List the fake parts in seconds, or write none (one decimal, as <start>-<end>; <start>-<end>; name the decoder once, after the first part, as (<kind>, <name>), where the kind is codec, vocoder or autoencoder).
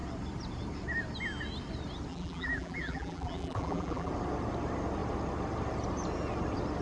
2.1-4.1 (vocoder, BigVGAN v2)